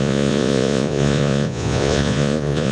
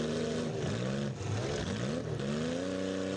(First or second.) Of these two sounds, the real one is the second